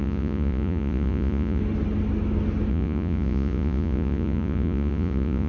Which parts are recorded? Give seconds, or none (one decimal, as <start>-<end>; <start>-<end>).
1.6-2.7